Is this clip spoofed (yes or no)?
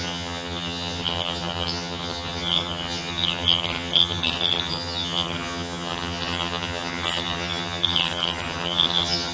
yes